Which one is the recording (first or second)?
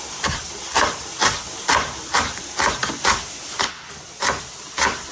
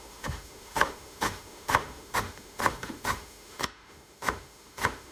first